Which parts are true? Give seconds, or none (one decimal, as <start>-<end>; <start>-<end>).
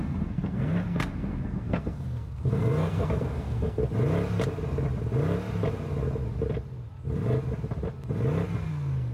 3.8-8.7